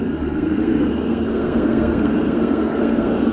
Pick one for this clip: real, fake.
fake